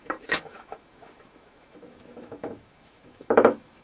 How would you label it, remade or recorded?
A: remade